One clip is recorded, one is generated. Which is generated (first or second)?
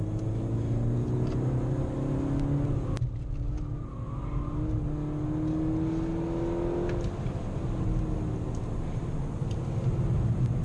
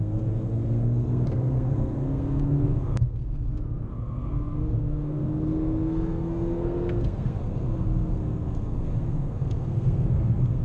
second